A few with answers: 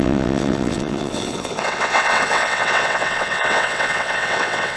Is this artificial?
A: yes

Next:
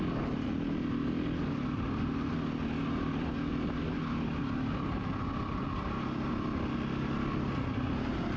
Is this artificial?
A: no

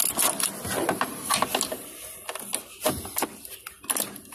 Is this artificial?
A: no